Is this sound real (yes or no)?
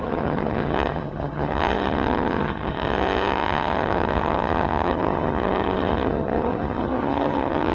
no